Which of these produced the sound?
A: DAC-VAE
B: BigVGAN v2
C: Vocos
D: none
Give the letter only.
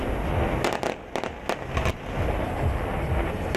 D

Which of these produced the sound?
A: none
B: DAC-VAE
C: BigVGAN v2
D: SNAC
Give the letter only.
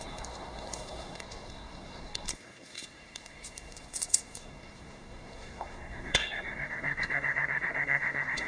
D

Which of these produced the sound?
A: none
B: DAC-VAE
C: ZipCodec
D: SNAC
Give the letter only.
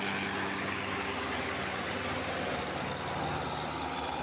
A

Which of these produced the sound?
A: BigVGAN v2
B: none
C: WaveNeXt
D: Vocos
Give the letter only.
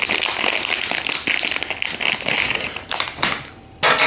B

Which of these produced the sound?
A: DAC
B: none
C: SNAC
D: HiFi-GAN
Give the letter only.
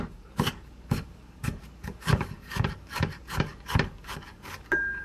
A